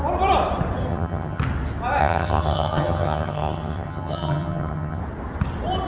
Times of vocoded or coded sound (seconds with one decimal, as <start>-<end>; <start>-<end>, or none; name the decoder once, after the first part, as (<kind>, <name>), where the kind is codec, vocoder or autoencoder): 0.9-1.4 (vocoder, HiFi-GAN); 2.0-5.0